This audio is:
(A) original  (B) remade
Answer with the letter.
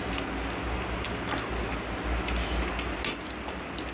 A